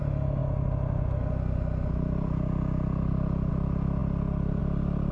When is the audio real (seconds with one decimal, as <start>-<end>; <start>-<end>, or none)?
0.0-5.1